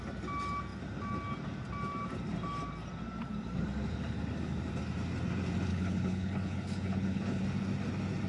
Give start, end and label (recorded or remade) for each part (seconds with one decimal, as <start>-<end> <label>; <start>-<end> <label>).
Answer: 0.0-5.7 recorded; 5.7-7.4 remade; 7.4-8.3 recorded